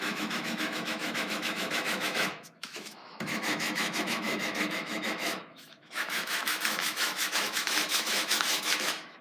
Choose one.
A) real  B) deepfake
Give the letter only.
B